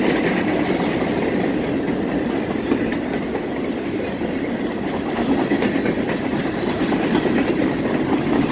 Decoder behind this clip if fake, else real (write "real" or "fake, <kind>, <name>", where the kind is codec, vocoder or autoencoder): real